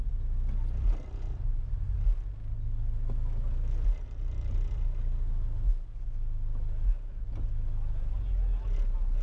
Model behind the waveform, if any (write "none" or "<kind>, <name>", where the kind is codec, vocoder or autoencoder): none